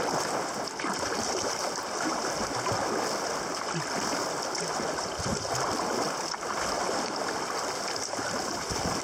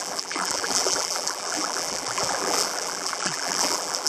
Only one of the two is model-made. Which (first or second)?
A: second